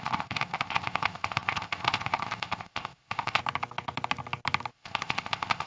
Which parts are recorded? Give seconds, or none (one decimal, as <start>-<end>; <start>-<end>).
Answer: 3.4-4.7